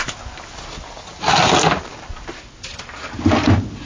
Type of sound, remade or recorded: recorded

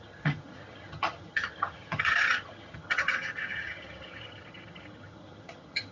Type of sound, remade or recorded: remade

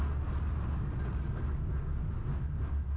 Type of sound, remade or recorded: recorded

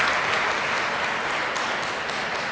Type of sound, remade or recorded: recorded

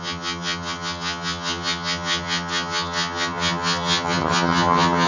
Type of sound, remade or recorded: remade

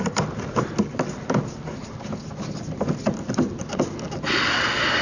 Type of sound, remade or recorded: recorded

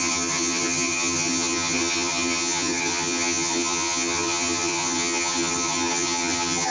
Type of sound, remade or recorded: remade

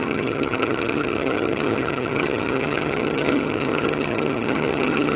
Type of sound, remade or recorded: remade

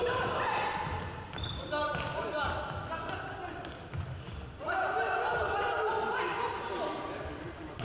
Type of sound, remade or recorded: recorded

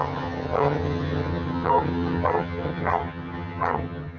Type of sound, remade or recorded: remade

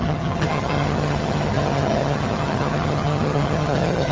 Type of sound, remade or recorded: remade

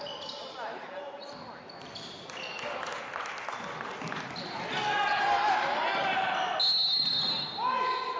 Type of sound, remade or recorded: recorded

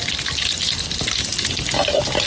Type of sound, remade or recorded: recorded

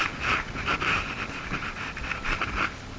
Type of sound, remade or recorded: recorded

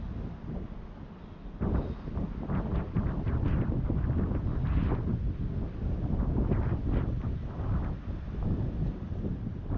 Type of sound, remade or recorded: recorded